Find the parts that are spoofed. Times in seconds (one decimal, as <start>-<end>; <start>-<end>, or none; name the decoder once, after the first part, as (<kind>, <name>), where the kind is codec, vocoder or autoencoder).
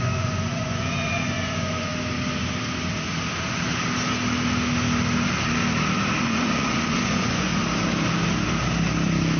0.0-1.9 (vocoder, Vocos); 6.2-7.5